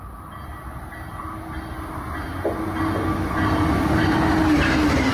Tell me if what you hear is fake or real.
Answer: real